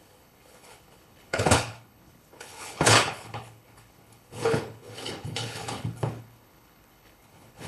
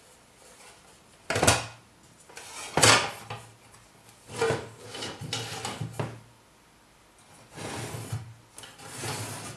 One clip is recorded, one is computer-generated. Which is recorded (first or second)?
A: second